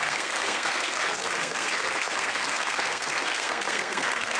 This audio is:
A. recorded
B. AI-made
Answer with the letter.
B